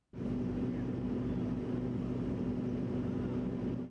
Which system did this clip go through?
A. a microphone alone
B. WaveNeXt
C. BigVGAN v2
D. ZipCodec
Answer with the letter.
A